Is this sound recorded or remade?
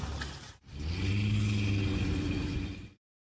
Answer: recorded